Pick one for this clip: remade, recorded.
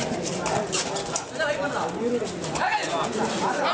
recorded